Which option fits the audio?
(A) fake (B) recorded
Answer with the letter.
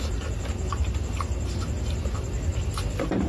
B